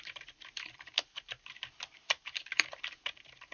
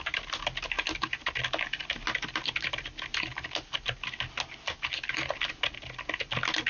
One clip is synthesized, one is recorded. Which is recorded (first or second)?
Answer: second